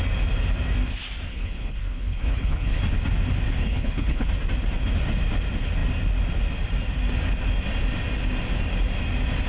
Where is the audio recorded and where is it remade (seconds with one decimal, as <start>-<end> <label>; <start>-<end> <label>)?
0.0-1.3 recorded; 1.3-2.8 remade; 2.8-3.6 recorded; 3.6-4.3 remade; 4.3-9.5 recorded